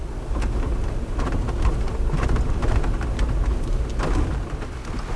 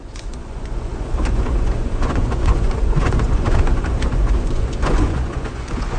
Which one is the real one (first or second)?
first